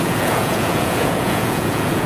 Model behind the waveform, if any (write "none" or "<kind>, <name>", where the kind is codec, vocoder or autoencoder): vocoder, Vocos